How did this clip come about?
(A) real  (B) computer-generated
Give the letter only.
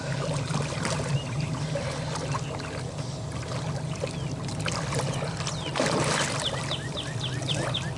A